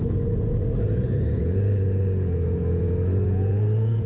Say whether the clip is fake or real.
fake